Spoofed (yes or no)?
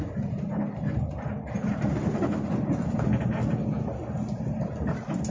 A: no